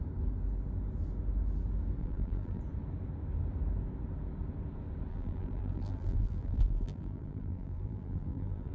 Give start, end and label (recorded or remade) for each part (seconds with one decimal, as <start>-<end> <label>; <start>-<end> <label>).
0.0-2.0 recorded; 2.0-2.6 remade; 2.6-5.1 recorded; 5.1-8.7 remade